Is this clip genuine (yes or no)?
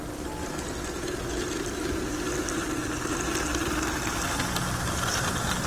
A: yes